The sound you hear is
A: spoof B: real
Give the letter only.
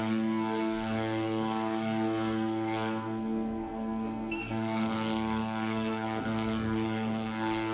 A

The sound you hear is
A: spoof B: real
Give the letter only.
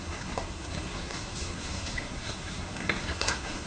A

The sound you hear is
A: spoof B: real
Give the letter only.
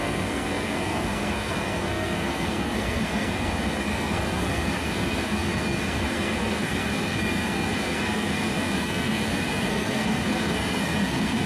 A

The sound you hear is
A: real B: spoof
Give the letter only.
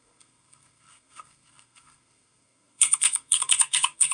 B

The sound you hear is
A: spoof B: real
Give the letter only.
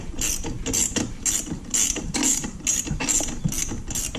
B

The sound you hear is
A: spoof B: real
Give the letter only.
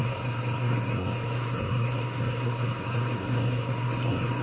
A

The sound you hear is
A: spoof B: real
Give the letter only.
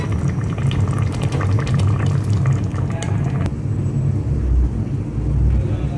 B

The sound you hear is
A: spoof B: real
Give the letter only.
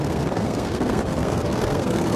A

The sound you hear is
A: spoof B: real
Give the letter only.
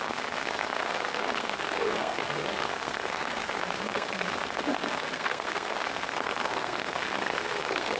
A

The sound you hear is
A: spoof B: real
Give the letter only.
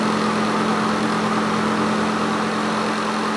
B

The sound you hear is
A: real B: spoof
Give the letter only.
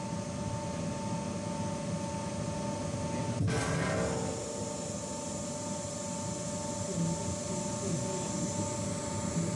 A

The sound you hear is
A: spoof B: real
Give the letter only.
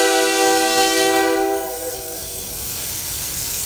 A